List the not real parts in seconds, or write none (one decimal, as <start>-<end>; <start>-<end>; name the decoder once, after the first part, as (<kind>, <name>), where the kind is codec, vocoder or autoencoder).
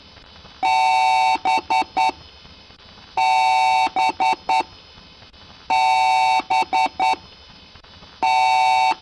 none